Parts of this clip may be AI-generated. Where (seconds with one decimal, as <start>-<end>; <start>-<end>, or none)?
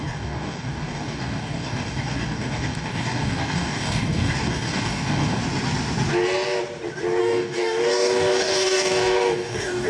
0.0-5.4; 7.2-9.9